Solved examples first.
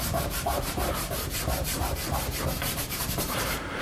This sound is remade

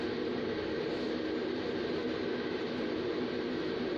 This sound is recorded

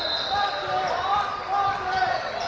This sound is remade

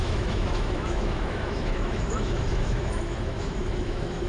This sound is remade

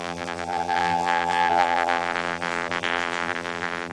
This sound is remade